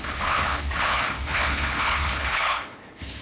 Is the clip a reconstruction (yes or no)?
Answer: yes